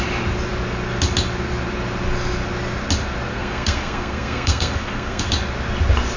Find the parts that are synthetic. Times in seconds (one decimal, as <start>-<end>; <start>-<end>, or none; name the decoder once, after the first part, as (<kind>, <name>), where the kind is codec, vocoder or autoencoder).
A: 3.3-5.2 (codec, SNAC)